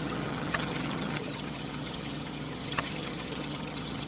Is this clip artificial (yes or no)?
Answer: yes